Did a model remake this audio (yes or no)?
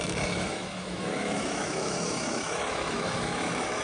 yes